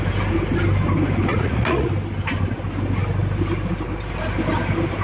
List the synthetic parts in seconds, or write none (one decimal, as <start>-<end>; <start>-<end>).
1.3-1.9